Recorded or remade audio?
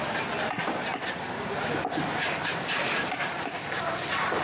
recorded